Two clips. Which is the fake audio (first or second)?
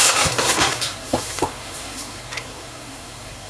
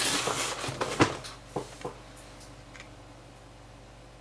first